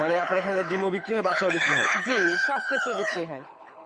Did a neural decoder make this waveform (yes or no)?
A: yes